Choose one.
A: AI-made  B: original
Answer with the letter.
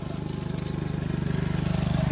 B